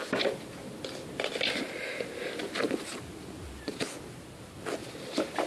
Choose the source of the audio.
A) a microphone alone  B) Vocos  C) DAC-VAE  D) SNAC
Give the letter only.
A